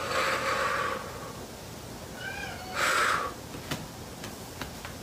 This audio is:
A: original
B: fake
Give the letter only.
A